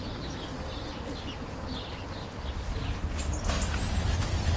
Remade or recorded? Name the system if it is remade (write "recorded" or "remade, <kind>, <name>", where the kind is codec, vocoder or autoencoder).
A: recorded